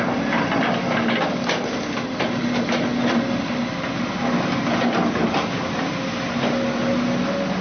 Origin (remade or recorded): recorded